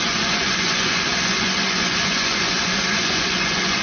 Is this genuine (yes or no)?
no